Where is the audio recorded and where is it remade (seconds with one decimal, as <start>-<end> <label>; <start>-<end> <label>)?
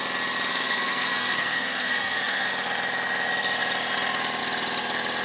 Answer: 0.0-0.5 recorded; 0.5-2.5 remade; 2.5-5.2 recorded